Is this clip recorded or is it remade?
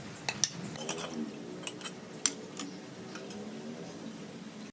recorded